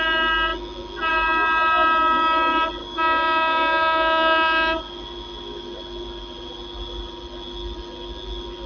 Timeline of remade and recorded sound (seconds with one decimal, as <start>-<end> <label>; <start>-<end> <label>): 0.0-2.8 recorded; 2.8-4.8 remade; 4.8-8.7 recorded